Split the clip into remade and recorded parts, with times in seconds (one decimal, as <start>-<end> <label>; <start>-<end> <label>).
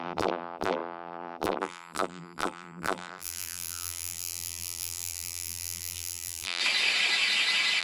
0.0-6.6 remade; 6.6-7.8 recorded